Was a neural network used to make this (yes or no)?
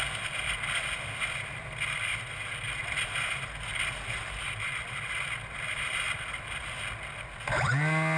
no